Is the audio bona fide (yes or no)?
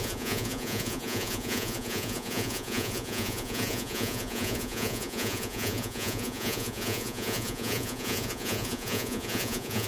no